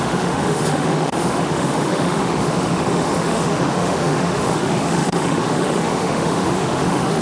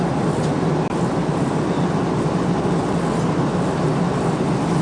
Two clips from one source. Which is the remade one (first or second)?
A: first